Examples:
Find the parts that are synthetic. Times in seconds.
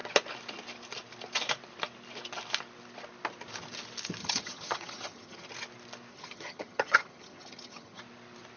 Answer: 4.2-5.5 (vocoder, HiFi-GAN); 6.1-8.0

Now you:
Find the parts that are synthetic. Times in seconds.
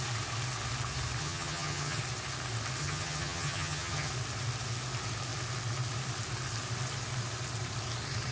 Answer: 1.2-2.0 (vocoder, HiFi-GAN); 2.8-4.1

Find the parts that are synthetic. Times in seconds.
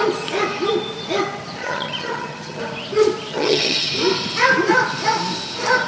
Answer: 1.6-2.6 (vocoder, HiFi-GAN); 3.3-3.9